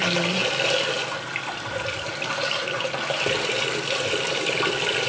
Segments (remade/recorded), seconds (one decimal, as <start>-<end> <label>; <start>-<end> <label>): 0.0-5.1 recorded